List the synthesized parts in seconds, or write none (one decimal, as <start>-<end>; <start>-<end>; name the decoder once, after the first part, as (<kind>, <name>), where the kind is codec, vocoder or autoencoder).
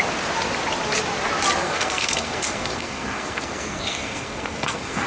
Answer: 1.6-5.1 (codec, SNAC)